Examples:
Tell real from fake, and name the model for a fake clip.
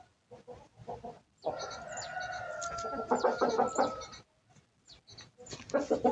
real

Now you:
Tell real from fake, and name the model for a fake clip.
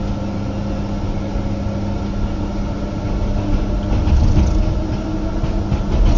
real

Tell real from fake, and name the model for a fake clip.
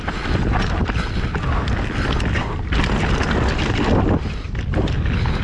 real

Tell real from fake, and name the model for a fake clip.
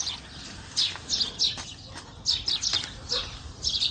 real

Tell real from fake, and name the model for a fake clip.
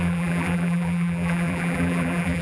fake, vocoder, BigVGAN v2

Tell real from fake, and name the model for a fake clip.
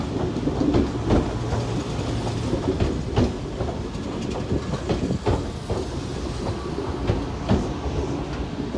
real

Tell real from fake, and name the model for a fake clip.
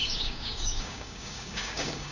fake, codec, DAC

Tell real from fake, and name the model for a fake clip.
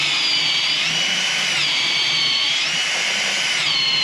fake, vocoder, BigVGAN v2